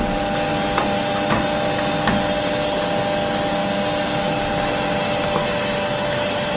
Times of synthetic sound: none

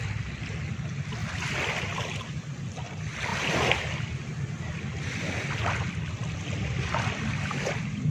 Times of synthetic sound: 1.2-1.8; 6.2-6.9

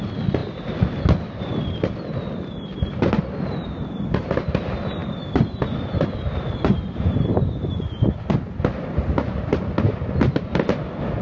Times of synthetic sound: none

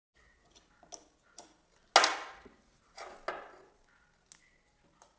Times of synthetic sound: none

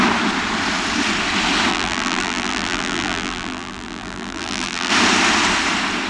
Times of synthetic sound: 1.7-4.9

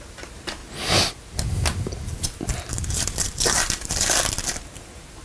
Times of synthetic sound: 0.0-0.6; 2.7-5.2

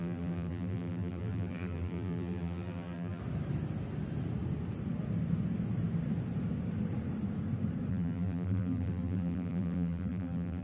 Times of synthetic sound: 0.0-3.2; 7.9-10.6